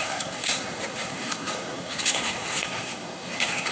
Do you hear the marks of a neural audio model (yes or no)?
yes